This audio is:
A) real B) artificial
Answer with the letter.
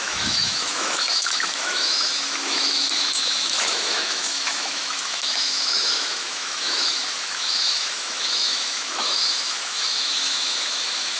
B